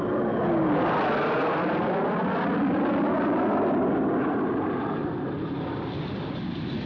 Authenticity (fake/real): real